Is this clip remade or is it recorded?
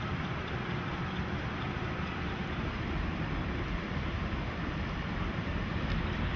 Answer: remade